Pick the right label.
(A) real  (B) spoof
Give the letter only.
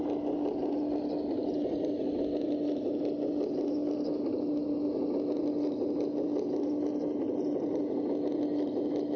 A